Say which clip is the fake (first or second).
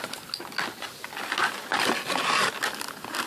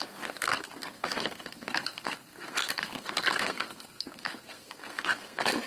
second